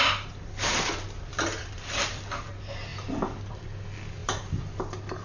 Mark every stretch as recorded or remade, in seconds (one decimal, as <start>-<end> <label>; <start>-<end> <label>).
0.0-1.3 recorded; 1.3-2.3 remade; 2.3-2.9 recorded; 2.9-3.6 remade; 3.6-4.2 recorded; 4.2-4.8 remade; 4.8-5.2 recorded